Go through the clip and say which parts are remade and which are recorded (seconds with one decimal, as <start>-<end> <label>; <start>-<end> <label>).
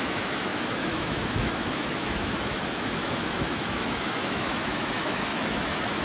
0.0-6.0 remade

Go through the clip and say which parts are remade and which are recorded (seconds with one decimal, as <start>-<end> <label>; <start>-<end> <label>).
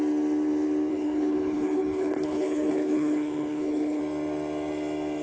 0.0-0.9 recorded; 0.9-4.0 remade; 4.0-5.2 recorded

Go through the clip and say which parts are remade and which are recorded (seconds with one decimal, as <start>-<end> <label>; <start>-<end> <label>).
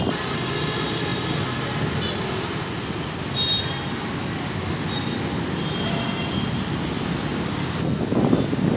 0.0-8.8 recorded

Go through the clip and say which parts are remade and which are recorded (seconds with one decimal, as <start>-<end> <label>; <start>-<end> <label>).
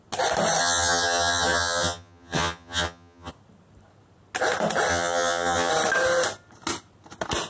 0.0-0.6 recorded; 0.6-3.3 remade; 3.3-4.9 recorded; 4.9-5.7 remade; 5.7-7.5 recorded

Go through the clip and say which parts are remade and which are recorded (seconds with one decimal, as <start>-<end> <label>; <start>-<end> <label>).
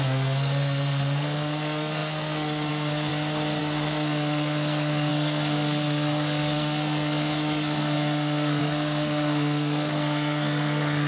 0.0-3.1 remade; 3.1-3.6 recorded; 3.6-11.1 remade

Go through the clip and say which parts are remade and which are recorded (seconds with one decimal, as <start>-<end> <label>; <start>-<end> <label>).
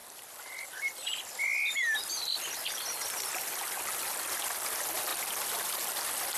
0.0-6.4 recorded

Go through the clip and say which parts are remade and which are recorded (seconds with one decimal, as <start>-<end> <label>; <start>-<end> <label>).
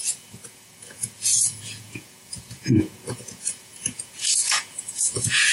0.0-5.5 remade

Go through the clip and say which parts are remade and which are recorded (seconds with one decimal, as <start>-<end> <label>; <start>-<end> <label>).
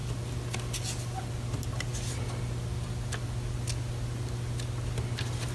0.0-5.5 recorded